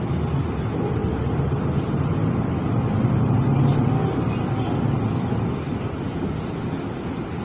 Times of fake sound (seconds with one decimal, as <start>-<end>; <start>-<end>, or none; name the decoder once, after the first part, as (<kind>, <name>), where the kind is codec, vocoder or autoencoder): none